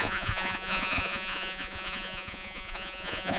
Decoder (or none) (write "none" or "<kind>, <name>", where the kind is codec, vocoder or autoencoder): vocoder, Vocos